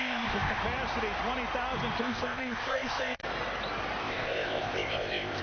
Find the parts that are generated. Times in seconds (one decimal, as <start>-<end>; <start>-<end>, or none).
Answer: 0.0-0.6; 2.0-3.2; 4.0-5.4

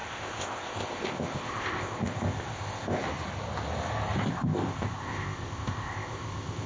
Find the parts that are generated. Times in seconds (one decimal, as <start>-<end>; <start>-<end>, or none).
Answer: 0.0-3.0; 4.3-6.7

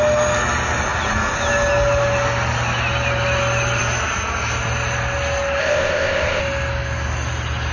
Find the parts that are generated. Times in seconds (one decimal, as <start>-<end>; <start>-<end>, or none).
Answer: 5.6-6.4

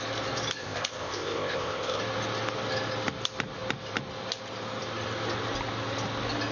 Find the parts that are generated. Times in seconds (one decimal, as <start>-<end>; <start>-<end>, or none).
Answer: 0.6-2.0

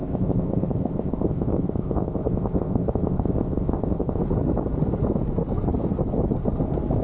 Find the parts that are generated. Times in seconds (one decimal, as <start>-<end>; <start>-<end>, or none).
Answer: 0.0-4.2

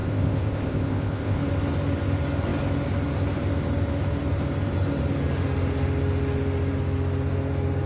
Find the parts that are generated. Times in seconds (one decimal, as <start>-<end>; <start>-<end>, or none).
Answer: 0.0-1.4

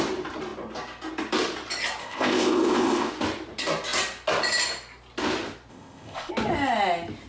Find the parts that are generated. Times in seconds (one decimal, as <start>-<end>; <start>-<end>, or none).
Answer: 2.0-3.1; 5.7-6.3

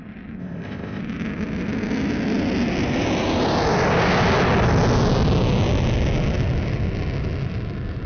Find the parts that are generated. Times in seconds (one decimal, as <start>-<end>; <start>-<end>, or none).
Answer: 0.4-1.0